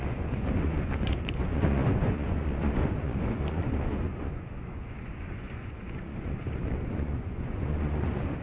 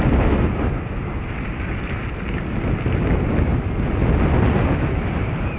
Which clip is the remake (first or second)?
first